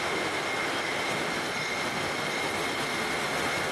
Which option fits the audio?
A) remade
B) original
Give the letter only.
B